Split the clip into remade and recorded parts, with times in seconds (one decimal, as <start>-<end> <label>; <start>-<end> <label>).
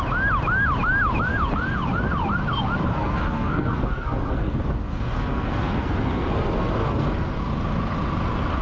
0.0-2.9 recorded; 2.9-7.4 remade; 7.4-8.6 recorded